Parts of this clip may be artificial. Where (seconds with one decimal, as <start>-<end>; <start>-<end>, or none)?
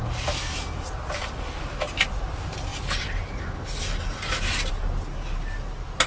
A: none